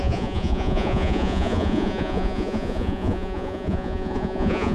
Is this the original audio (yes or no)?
no